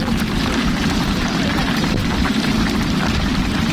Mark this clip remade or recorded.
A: remade